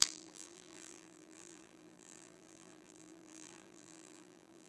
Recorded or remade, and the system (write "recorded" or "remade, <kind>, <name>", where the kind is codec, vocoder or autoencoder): remade, vocoder, BigVGAN v2